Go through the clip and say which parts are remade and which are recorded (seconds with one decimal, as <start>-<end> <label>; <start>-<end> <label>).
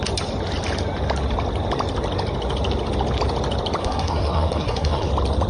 0.0-3.8 recorded; 3.8-5.1 remade; 5.1-5.5 recorded